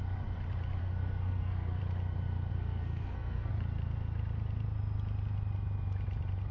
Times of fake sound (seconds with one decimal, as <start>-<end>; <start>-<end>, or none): 0.8-1.8; 2.5-3.5